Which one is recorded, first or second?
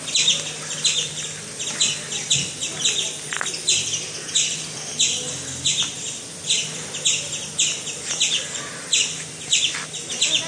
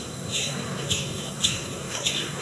first